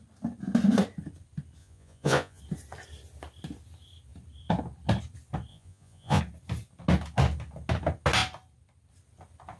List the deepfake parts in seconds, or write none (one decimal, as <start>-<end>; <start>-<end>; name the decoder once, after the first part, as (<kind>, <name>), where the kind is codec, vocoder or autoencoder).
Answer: 1.6-2.4 (vocoder, Vocos); 5.5-6.2